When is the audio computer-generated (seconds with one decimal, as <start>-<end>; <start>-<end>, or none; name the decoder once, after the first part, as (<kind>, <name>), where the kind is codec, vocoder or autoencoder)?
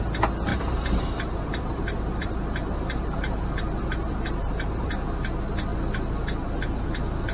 0.5-4.9 (vocoder, BigVGAN v2)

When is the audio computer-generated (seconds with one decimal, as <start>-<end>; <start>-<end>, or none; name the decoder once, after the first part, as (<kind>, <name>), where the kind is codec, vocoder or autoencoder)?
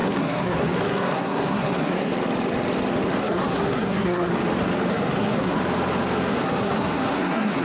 0.0-2.1 (codec, SNAC); 3.2-4.3; 4.9-5.6; 6.3-7.6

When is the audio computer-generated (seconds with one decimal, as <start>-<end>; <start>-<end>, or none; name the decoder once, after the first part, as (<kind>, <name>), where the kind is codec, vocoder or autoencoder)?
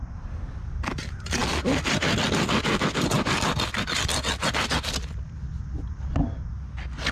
none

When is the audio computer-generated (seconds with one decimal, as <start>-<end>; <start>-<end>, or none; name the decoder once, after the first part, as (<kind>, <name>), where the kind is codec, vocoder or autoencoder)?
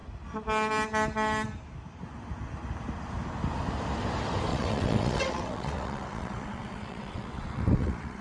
4.5-8.2 (vocoder, WaveNeXt)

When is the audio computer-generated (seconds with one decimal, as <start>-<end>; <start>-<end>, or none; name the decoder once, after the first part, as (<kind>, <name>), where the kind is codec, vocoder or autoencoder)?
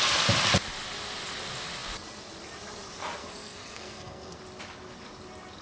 3.2-4.4 (codec, SNAC)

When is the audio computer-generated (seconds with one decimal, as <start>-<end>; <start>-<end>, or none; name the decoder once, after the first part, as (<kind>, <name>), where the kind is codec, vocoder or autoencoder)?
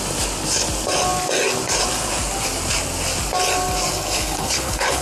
3.9-5.0 (codec, HILCodec)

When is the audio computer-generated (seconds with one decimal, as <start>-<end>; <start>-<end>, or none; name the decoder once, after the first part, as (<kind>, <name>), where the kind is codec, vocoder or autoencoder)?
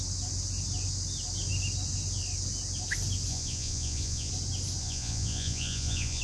3.3-4.3 (vocoder, Vocos); 4.8-6.2